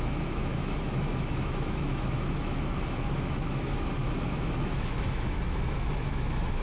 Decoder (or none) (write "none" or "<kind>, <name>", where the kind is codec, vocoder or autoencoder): autoencoder, DAC-VAE